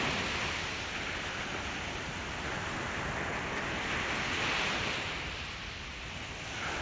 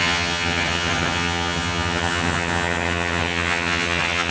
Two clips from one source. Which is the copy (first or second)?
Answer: second